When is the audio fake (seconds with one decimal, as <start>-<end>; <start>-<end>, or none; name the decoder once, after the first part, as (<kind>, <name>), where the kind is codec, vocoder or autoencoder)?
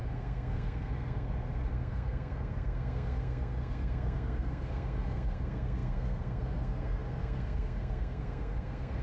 0.0-9.0 (codec, SNAC)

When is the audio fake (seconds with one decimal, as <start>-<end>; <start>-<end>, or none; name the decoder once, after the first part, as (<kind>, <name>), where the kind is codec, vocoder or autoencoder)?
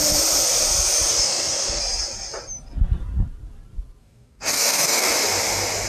1.1-1.8 (codec, DAC); 4.0-5.1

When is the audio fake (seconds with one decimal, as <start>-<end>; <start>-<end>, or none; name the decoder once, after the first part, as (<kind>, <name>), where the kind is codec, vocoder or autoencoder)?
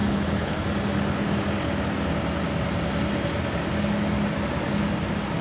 0.0-0.6 (codec, HILCodec)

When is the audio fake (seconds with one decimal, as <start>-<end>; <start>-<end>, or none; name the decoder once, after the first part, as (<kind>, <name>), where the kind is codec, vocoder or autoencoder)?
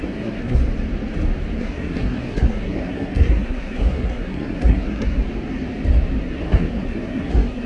0.0-0.6 (codec, SNAC); 1.6-5.2; 6.2-7.7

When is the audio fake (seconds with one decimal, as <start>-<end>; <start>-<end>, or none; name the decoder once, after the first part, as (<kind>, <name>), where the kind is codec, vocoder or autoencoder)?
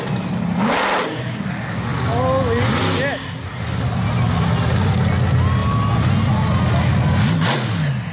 none